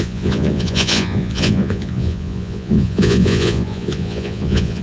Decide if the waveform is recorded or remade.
remade